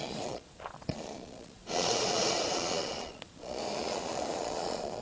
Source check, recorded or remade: remade